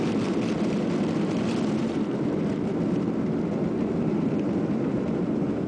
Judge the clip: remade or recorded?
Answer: recorded